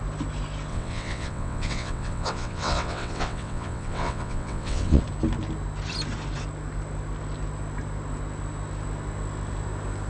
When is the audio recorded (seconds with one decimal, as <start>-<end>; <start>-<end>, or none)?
0.0-0.7; 5.0-10.1